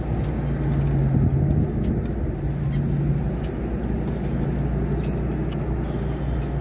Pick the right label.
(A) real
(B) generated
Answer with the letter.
A